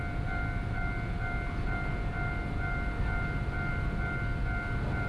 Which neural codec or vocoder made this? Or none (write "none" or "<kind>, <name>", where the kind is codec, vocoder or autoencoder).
none